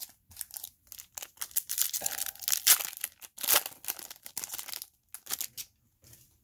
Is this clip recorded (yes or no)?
yes